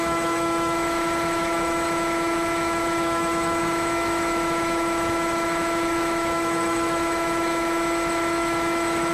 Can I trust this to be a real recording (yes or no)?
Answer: no